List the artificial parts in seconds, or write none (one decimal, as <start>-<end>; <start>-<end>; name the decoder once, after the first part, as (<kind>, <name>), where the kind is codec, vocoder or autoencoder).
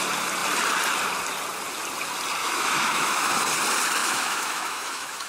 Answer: 2.4-3.3 (autoencoder, DAC-VAE); 4.0-5.3